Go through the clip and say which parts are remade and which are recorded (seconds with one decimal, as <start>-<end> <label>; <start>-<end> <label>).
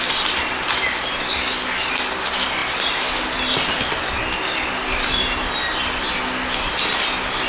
0.0-7.5 recorded